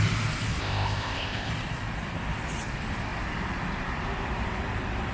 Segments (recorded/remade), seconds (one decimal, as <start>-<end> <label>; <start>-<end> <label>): 0.0-0.6 recorded; 0.6-1.5 remade; 1.5-5.1 recorded